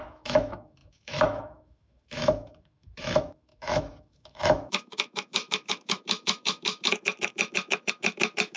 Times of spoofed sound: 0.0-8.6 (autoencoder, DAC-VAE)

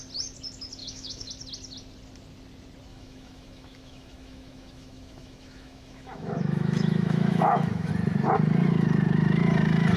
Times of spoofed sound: 0.8-1.3 (autoencoder, DAC-VAE); 2.9-7.9